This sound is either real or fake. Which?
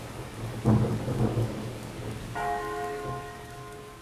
fake